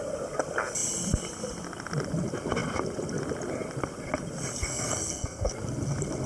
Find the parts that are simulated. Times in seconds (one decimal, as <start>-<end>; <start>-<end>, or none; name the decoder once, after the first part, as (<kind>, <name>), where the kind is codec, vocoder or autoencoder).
4.6-5.5 (codec, SNAC)